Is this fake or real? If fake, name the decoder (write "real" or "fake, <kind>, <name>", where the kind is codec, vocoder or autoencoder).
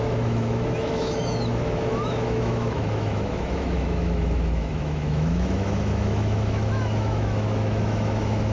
fake, autoencoder, DAC-VAE